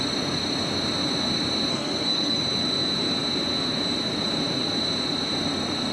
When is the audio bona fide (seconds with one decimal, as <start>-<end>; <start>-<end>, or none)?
0.0-1.7; 2.4-5.9